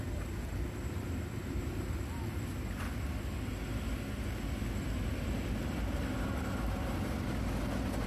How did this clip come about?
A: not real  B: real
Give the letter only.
B